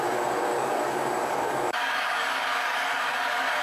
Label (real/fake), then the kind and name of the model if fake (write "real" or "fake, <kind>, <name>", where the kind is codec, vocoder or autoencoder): fake, codec, DAC